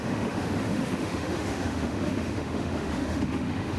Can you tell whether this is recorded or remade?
remade